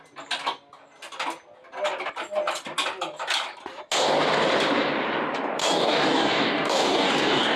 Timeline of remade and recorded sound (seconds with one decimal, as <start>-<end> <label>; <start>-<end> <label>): 0.0-5.6 recorded; 5.6-7.6 remade